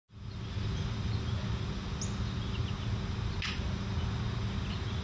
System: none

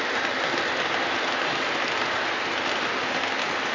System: none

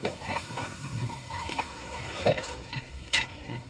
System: codec, SNAC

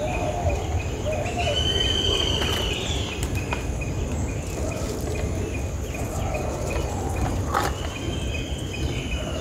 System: none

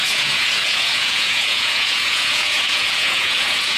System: vocoder, Vocos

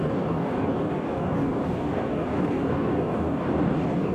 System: codec, DAC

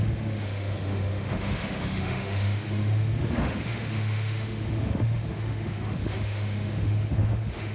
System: autoencoder, DAC-VAE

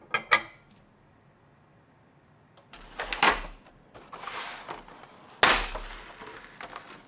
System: none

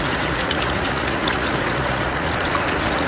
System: vocoder, Vocos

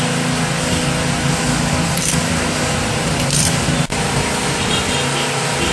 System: none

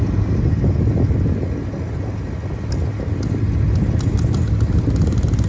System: none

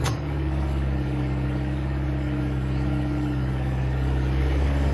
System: codec, DAC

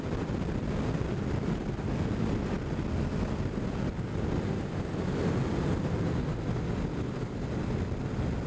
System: none